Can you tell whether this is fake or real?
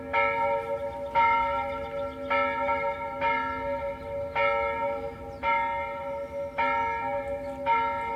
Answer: real